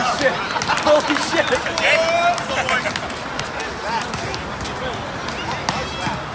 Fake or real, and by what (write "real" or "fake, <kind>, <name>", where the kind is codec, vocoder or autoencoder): real